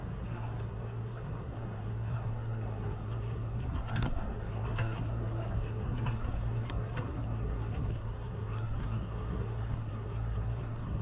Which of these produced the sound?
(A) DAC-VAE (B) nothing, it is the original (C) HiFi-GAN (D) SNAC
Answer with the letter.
D